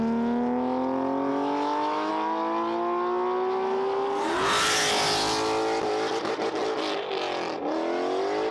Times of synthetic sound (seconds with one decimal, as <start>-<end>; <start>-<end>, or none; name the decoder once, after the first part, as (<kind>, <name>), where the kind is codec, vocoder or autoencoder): 1.3-2.1 (autoencoder, DAC-VAE)